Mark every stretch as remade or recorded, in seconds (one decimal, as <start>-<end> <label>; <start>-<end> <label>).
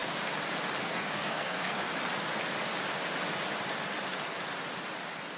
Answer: 0.0-0.8 recorded; 0.8-1.9 remade; 1.9-5.4 recorded